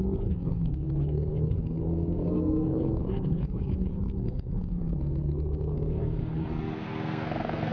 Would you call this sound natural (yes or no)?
no